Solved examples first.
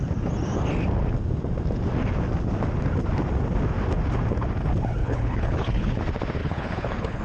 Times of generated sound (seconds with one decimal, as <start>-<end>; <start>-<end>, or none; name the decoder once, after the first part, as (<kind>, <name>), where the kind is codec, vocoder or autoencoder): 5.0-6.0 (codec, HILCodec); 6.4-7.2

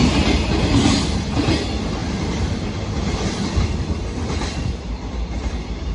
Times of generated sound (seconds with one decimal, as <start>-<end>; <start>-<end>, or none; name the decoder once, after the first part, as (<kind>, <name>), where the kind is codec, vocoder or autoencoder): 2.0-5.5 (vocoder, BigVGAN v2)

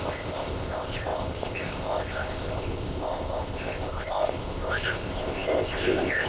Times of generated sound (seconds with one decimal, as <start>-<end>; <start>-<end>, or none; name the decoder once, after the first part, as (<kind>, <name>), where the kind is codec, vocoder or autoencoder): 0.0-6.3 (codec, ZipCodec)

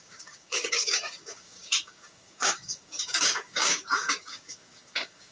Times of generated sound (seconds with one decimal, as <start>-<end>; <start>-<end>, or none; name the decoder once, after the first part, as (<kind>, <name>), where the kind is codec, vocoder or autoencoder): 0.0-5.3 (codec, DAC)